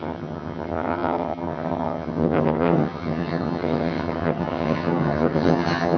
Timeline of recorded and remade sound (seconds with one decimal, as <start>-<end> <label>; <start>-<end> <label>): 0.0-6.0 remade